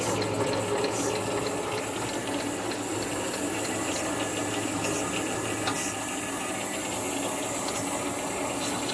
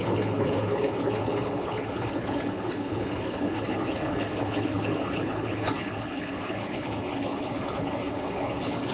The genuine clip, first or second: first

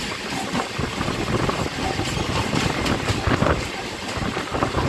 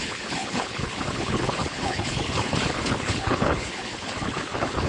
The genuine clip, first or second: first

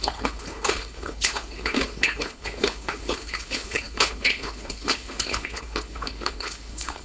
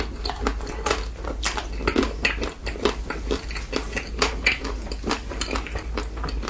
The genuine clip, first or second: second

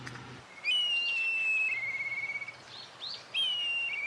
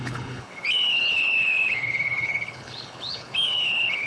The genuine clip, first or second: first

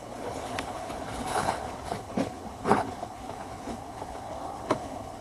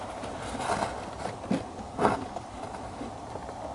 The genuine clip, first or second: second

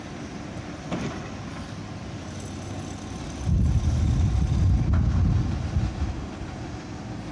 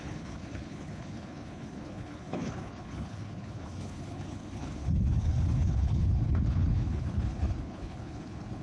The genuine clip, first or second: first